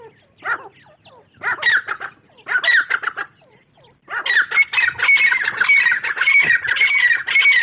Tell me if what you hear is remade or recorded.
recorded